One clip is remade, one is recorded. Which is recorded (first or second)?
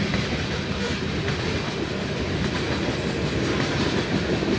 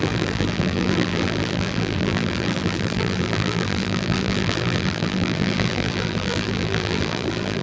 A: first